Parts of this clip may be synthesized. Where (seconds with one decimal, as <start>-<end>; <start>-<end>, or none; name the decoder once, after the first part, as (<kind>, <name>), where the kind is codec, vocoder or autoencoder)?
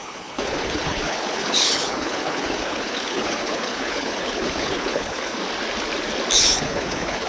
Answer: 0.0-5.4 (codec, HILCodec); 6.4-7.3